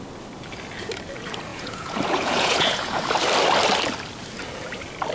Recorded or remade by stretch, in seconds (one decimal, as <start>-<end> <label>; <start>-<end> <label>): 0.0-1.5 recorded; 1.5-3.0 remade; 3.0-5.1 recorded